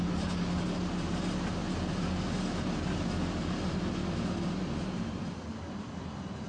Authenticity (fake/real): real